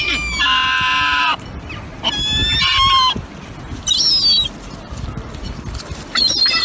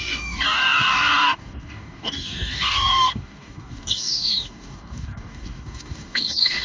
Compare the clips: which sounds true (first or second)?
first